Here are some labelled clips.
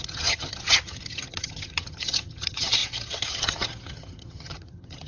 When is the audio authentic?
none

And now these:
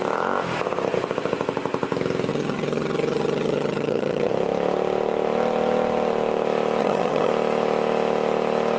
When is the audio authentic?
0.0-2.3; 4.3-6.8; 7.3-8.8

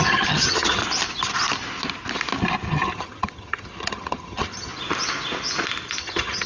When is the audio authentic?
0.8-2.7; 4.7-6.0

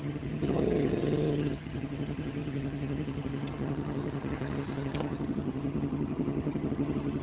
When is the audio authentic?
none

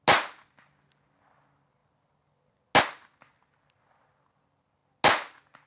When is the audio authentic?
0.0-5.7

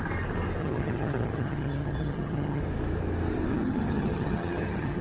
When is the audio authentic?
0.0-0.6; 2.6-3.5

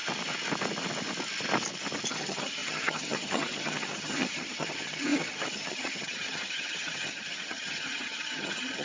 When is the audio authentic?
0.0-2.1